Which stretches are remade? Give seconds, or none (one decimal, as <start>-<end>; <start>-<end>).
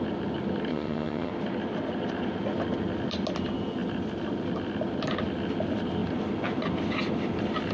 0.7-1.3